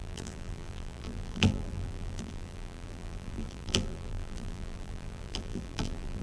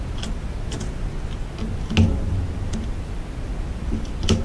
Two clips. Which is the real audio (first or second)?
second